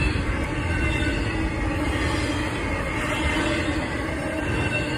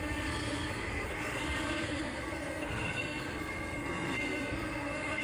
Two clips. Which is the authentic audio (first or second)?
first